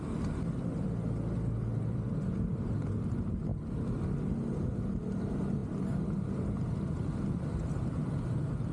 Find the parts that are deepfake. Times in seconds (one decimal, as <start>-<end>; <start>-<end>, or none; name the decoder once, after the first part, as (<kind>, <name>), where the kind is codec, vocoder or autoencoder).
none